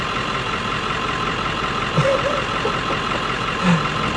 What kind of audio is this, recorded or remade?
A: recorded